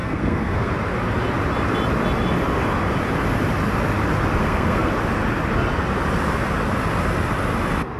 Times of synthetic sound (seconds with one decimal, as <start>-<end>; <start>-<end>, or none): 0.0-0.7; 4.4-4.9